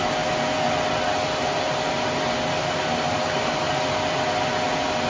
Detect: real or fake real